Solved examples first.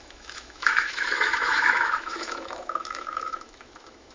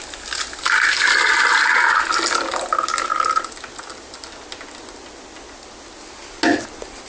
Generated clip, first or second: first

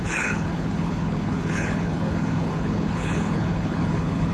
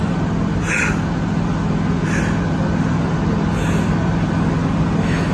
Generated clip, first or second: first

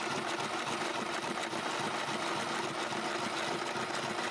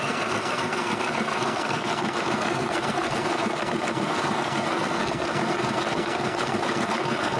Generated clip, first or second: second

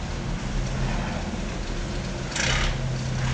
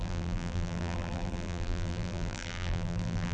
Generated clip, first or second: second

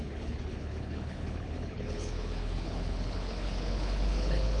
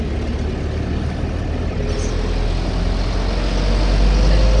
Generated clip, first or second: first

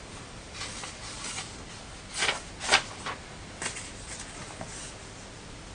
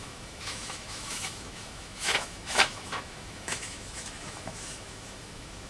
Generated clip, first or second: second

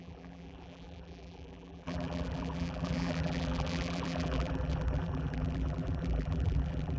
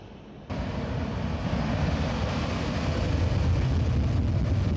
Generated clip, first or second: first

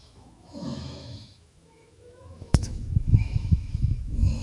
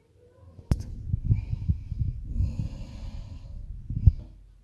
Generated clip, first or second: first